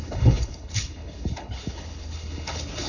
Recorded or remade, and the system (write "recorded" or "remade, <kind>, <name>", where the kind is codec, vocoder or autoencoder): remade, codec, HILCodec